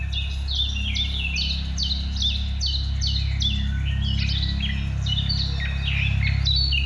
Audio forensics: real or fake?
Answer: real